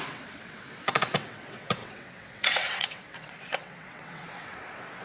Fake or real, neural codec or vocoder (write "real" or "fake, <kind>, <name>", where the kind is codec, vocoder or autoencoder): fake, vocoder, WaveNeXt